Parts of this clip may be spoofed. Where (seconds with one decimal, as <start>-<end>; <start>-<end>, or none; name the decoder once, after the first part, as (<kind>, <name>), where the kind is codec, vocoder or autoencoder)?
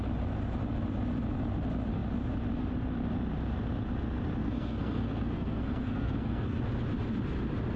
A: 4.4-6.6 (codec, SNAC)